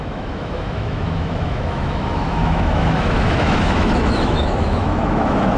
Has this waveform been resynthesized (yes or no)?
yes